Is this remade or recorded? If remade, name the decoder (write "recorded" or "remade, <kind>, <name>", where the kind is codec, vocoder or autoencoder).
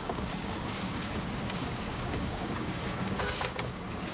remade, codec, DAC